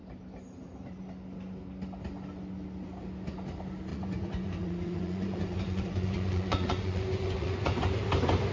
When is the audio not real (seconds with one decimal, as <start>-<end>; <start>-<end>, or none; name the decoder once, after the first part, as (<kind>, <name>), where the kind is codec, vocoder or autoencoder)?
3.9-8.0 (vocoder, Vocos)